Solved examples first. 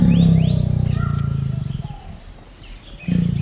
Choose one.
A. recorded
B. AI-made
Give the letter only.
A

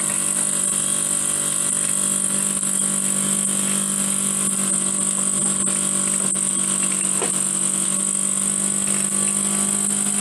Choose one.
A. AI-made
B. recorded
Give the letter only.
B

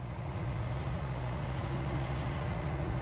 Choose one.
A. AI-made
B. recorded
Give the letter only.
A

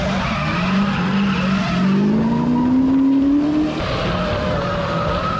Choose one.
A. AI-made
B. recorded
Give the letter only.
B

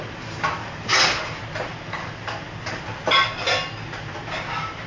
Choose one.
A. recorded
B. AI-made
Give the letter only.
A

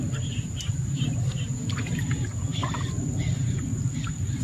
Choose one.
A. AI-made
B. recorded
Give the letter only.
B